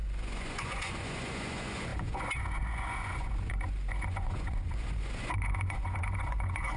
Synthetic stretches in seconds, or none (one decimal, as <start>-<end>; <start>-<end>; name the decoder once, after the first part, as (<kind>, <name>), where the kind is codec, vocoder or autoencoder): 0.0-6.8 (vocoder, Vocos)